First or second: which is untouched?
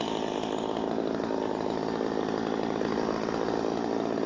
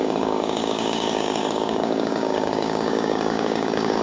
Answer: first